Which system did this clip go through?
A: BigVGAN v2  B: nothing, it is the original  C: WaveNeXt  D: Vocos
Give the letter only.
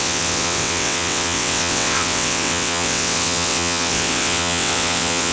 C